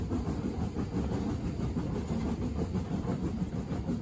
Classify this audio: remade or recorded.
recorded